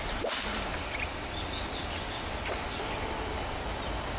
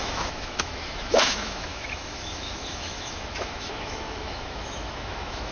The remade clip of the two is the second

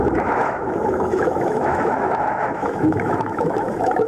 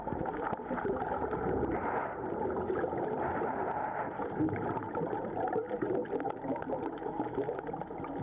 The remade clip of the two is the first